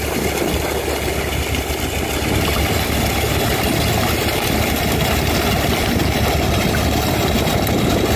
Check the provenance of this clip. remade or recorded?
recorded